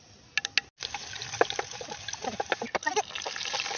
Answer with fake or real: real